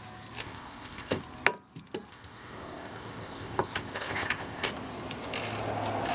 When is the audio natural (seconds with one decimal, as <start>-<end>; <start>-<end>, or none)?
0.0-0.4; 1.2-2.1; 4.7-6.1